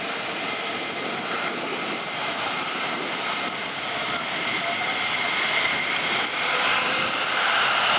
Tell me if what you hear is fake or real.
real